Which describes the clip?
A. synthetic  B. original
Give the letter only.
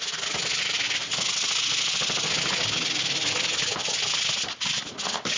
B